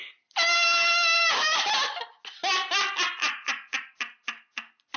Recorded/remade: recorded